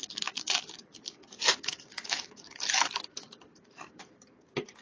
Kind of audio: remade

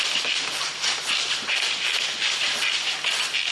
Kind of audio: remade